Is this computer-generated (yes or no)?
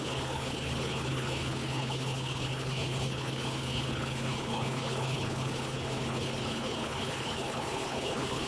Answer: yes